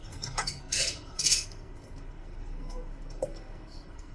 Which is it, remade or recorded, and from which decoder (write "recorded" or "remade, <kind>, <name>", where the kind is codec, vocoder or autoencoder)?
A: remade, codec, SNAC